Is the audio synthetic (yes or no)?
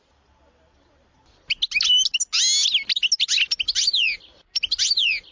no